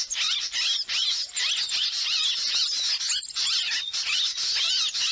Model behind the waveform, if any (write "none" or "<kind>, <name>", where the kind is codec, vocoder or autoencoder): none